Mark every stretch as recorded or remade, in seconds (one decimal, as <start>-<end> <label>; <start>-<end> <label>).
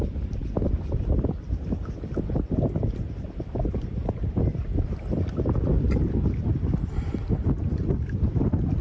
0.0-4.0 remade; 4.0-4.8 recorded; 4.8-8.8 remade